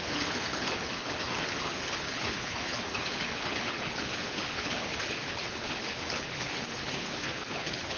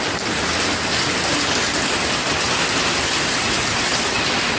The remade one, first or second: first